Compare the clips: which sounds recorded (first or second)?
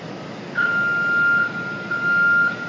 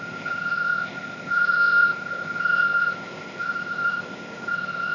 first